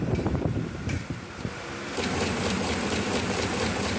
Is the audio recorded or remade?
remade